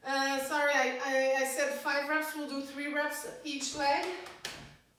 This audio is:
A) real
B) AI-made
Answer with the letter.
B